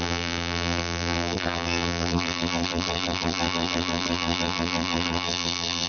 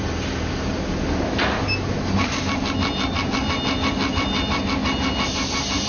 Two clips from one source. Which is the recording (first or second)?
second